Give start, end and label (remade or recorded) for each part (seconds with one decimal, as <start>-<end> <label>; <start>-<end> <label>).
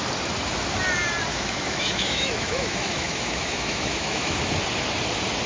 0.0-1.3 recorded; 1.3-4.6 remade; 4.6-5.5 recorded